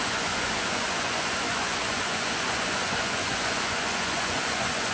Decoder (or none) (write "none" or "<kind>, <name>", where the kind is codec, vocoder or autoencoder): vocoder, Vocos